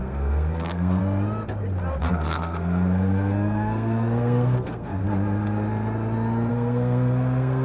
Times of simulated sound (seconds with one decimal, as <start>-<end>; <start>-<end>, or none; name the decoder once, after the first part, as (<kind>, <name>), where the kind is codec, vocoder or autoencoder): 0.0-1.0 (codec, SNAC); 2.0-5.0; 6.5-7.6